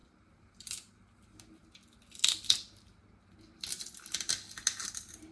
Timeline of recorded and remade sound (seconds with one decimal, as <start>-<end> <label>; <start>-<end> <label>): 0.0-1.6 remade; 1.6-4.8 recorded; 4.8-5.3 remade